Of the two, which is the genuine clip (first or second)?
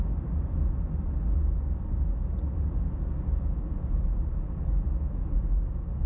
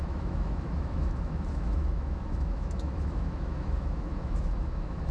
first